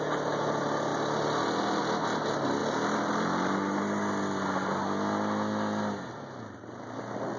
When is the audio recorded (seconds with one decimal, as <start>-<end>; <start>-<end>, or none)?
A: 0.0-7.4